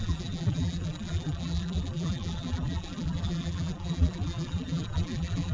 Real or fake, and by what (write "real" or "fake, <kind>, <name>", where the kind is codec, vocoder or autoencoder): fake, vocoder, BigVGAN v2